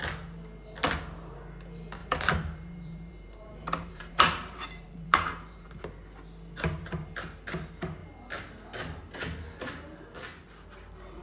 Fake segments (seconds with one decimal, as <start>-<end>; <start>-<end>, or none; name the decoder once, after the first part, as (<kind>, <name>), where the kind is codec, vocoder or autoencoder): 2.0-5.7 (vocoder, BigVGAN v2)